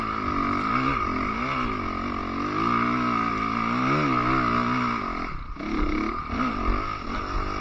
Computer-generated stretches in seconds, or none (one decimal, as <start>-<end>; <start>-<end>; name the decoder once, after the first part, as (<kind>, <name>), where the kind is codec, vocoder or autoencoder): none